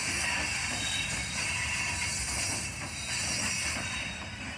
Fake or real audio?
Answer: real